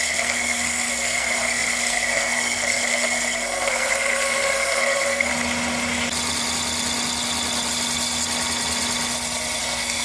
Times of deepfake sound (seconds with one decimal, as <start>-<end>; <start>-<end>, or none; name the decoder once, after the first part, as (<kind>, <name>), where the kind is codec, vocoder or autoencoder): 0.0-5.3 (codec, SNAC); 9.6-10.0